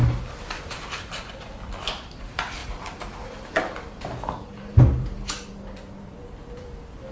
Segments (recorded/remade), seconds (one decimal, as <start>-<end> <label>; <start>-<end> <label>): 0.0-0.6 recorded; 0.6-7.1 remade